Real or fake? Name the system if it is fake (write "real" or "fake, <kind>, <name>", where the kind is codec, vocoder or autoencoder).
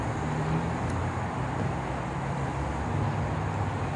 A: real